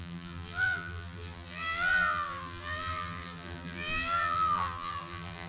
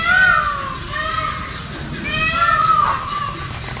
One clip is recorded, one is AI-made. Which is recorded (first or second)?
second